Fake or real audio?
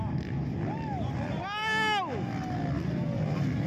real